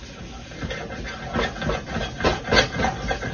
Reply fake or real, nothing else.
real